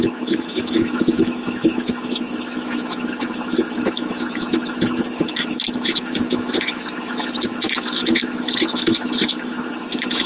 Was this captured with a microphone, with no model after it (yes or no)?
no